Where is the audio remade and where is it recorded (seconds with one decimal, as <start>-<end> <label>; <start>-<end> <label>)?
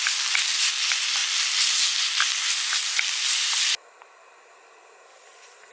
0.0-5.7 recorded